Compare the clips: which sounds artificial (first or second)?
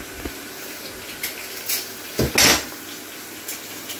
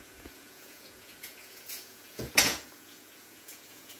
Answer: second